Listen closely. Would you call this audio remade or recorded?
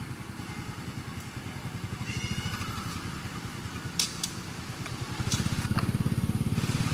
recorded